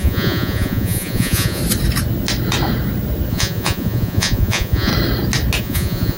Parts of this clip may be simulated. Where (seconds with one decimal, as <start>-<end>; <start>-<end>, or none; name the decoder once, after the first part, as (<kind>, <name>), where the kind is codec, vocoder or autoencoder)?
0.0-1.6 (vocoder, Vocos); 3.3-4.9; 5.6-6.2